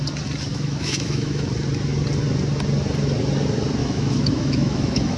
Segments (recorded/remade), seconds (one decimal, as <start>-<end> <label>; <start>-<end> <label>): 0.0-0.5 recorded; 0.5-1.5 remade; 1.5-3.8 recorded; 3.8-5.2 remade